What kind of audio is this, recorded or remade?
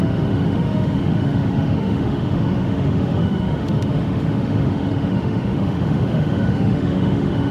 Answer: remade